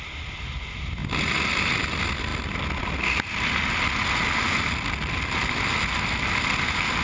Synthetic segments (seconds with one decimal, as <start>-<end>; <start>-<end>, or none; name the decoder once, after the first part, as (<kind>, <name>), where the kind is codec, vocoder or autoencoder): none